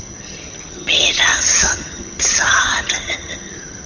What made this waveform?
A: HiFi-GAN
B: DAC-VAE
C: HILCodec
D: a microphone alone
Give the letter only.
A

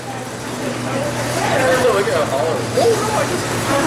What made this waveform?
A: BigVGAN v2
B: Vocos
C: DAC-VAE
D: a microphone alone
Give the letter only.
A